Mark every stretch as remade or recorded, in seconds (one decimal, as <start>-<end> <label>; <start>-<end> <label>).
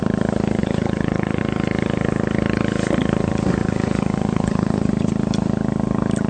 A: 0.0-0.6 recorded; 0.6-1.4 remade; 1.4-3.6 recorded; 3.6-4.9 remade; 4.9-6.3 recorded